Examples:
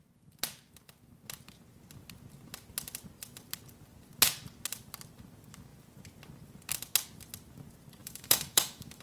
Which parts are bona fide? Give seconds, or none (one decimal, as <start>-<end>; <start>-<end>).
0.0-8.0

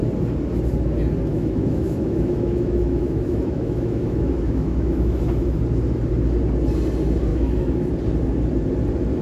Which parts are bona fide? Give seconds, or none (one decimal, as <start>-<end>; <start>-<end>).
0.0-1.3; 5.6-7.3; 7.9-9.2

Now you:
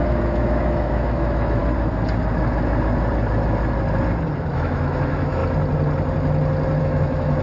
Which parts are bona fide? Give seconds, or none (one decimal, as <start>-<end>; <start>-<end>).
1.6-4.5; 5.4-6.8

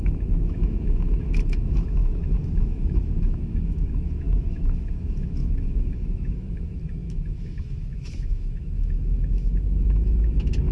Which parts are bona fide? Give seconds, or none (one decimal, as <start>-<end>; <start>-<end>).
none